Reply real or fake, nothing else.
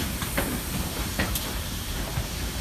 fake